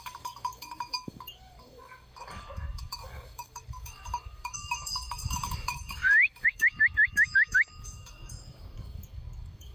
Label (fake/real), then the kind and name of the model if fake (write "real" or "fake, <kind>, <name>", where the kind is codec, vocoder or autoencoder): fake, codec, DAC